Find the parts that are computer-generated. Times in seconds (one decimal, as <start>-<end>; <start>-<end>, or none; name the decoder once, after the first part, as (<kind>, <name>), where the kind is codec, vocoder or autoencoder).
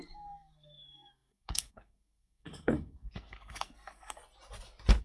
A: 0.0-4.2 (codec, SNAC)